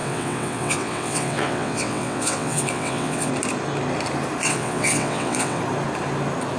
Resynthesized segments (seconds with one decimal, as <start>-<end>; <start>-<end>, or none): 0.0-3.3; 4.4-5.6